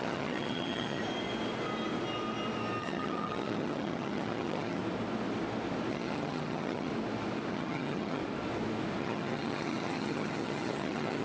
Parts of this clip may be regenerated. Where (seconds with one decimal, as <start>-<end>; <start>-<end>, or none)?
0.0-1.0; 2.8-4.8; 5.9-6.9; 7.5-8.2; 9.0-11.2